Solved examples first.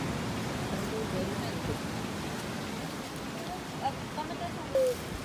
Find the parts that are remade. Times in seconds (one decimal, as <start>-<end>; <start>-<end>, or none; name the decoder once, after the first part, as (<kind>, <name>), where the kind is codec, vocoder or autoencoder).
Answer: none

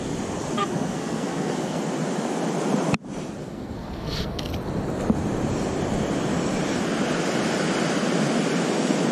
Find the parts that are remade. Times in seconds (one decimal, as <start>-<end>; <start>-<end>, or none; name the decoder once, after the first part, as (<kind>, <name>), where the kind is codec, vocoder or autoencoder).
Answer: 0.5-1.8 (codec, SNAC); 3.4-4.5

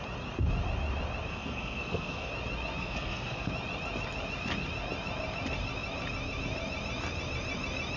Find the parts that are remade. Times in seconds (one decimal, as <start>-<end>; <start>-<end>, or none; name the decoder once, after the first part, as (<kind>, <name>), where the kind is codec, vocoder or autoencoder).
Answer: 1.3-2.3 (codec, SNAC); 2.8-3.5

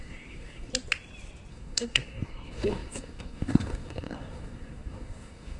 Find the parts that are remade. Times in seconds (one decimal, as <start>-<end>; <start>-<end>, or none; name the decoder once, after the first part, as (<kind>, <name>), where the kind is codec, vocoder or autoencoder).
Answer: 0.0-0.7 (codec, SNAC); 1.5-5.6